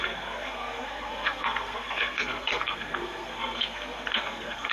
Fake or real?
fake